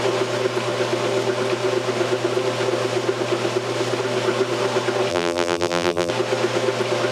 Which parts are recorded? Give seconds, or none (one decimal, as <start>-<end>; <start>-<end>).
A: 0.0-5.1; 6.1-7.1